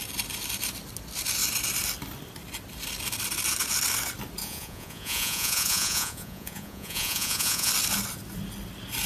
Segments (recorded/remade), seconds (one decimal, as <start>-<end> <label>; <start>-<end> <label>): 0.0-4.4 recorded; 4.4-7.7 remade; 7.7-9.1 recorded